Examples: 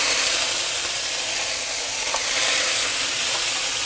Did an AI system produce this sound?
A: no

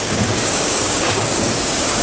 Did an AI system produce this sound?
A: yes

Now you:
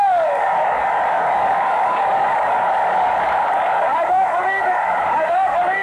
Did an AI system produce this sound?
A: yes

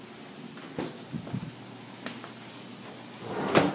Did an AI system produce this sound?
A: no